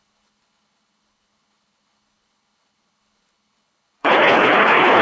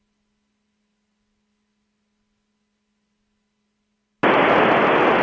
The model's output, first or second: first